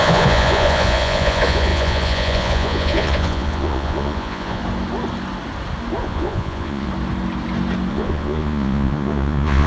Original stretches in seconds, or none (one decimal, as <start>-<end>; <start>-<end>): 4.6-6.0; 6.9-7.9